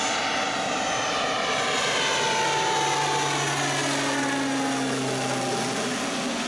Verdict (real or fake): real